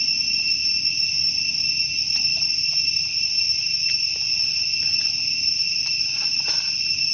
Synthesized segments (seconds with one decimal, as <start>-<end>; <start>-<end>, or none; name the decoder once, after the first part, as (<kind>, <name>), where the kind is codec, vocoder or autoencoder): 2.3-4.8 (vocoder, BigVGAN v2)